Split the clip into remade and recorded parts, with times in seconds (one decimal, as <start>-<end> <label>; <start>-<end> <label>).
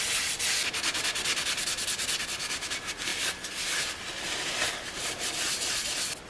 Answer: 0.0-3.1 recorded; 3.1-3.8 remade; 3.8-6.3 recorded